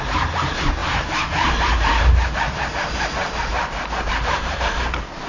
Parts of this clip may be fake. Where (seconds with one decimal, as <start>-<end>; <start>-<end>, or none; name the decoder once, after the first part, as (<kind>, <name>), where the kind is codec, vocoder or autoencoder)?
0.0-5.3 (vocoder, BigVGAN v2)